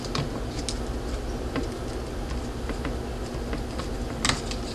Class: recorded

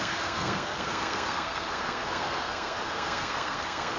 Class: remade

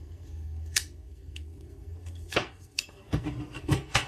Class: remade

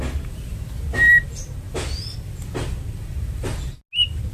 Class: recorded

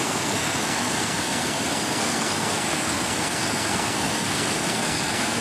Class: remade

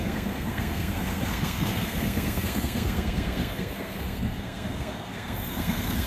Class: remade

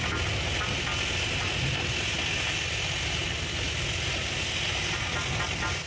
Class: recorded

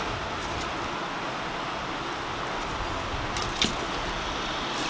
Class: recorded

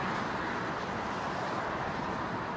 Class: recorded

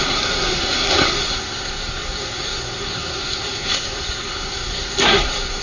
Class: remade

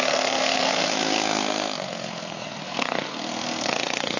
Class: remade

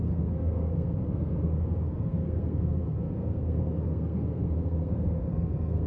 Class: remade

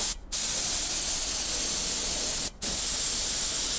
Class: recorded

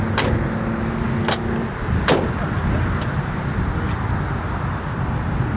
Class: recorded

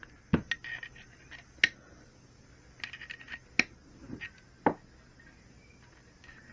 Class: recorded